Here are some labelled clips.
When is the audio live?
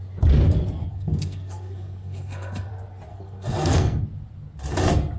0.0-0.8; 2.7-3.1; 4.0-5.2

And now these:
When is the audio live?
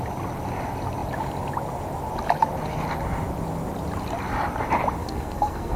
0.0-5.0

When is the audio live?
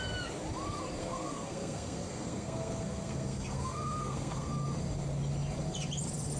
0.0-1.0; 4.5-6.4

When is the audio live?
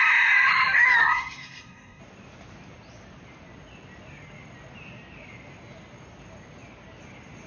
0.0-1.0; 2.0-7.5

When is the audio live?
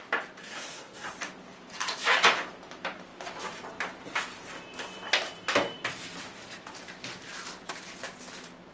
0.0-0.4; 1.1-8.7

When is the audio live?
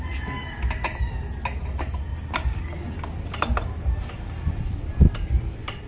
0.0-5.9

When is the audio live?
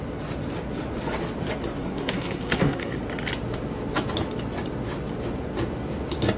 0.0-1.8; 3.0-6.4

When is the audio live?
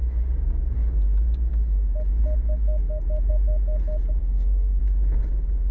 0.0-4.2; 4.8-5.7